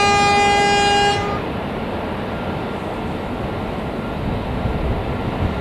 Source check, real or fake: real